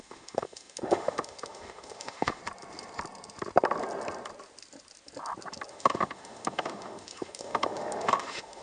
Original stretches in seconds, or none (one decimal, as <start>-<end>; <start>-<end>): 2.4-5.7